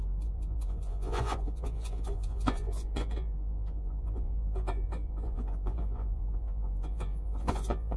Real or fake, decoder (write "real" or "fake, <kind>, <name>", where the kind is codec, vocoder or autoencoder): fake, vocoder, Vocos